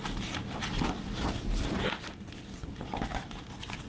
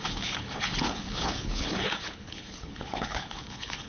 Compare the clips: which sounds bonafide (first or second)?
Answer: first